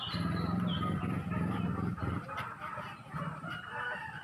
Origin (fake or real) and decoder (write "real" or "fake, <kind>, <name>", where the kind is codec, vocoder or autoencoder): fake, vocoder, BigVGAN v2